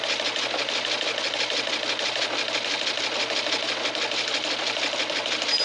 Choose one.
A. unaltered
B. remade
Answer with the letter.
A